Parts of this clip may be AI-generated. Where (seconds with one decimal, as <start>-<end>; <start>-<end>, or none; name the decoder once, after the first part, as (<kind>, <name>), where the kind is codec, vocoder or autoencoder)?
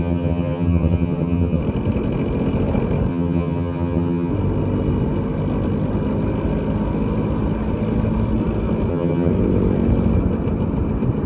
0.0-1.6 (vocoder, HiFi-GAN); 3.1-4.3; 8.9-9.3